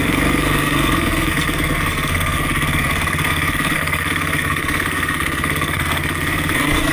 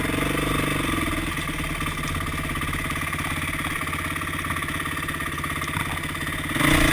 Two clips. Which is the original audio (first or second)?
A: second